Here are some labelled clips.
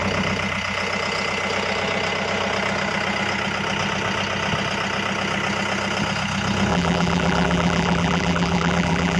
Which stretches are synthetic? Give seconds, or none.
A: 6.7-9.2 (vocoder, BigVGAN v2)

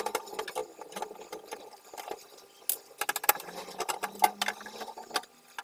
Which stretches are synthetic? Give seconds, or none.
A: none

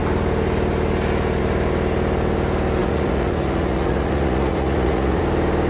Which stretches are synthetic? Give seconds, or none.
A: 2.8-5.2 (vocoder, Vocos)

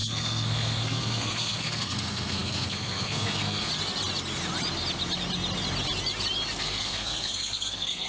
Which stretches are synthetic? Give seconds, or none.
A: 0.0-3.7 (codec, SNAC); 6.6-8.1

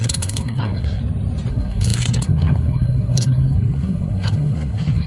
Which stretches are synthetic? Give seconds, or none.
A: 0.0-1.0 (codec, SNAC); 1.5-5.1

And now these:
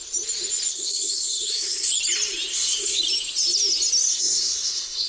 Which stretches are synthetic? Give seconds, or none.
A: 0.7-1.9 (codec, SNAC); 2.5-3.0; 4.1-5.1